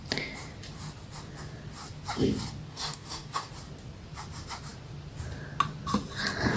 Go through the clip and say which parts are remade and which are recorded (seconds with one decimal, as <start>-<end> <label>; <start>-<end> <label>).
0.0-2.7 recorded; 2.7-3.5 remade; 3.5-6.6 recorded